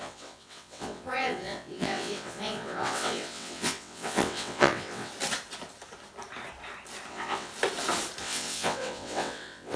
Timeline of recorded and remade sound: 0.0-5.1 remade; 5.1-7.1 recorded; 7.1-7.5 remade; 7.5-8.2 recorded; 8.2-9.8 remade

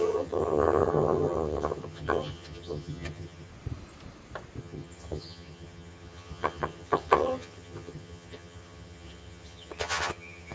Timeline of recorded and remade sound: 0.0-3.5 remade; 3.5-4.6 recorded; 4.6-10.5 remade

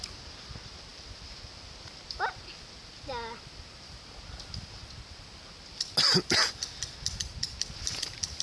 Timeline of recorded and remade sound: 0.0-8.4 recorded